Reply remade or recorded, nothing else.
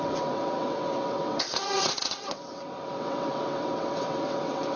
remade